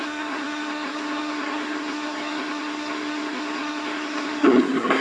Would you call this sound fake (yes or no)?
yes